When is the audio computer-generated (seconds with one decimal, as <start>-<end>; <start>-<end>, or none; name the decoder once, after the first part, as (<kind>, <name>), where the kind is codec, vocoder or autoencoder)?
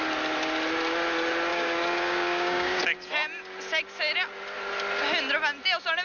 1.5-2.8 (codec, DAC)